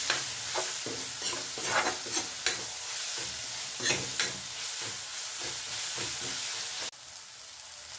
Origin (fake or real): real